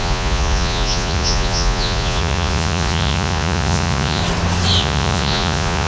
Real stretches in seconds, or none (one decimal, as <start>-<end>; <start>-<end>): 4.2-4.8